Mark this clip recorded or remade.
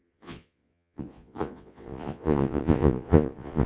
remade